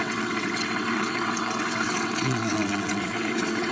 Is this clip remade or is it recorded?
remade